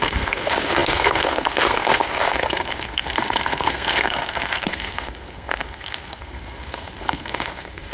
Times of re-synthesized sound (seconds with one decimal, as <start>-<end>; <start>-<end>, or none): 0.0-7.9